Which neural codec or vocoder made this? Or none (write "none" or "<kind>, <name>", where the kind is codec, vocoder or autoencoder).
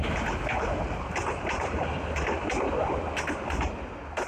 none